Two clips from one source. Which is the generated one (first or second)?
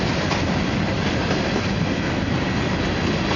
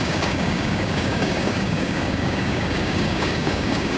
second